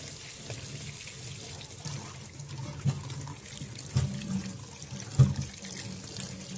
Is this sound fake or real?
real